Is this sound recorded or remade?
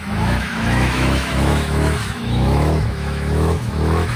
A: remade